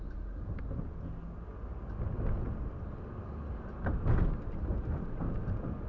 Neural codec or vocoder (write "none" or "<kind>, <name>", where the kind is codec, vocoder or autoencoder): none